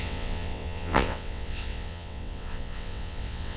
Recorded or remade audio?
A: remade